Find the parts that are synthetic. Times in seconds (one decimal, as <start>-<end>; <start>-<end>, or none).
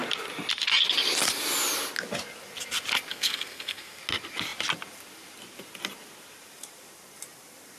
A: 3.1-4.0